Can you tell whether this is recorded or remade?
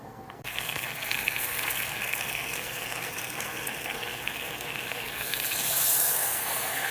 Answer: remade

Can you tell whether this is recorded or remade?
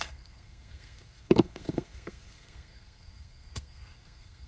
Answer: remade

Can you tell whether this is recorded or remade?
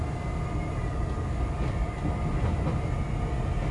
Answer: recorded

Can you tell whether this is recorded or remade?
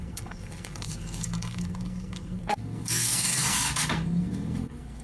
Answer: remade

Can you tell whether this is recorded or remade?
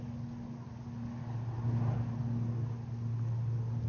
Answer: recorded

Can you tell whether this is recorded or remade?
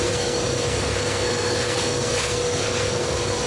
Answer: remade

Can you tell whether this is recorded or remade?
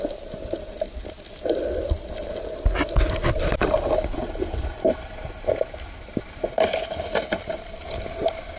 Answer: recorded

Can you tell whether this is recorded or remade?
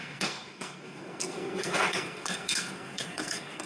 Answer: remade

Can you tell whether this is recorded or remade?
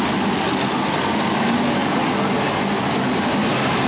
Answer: recorded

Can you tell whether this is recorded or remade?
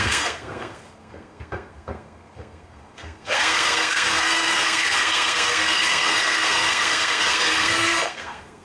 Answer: remade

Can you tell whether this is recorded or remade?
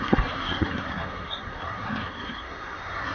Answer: remade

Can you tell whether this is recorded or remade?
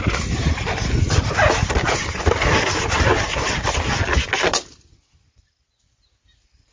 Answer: recorded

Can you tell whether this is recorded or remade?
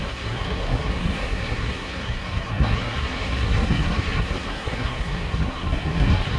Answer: remade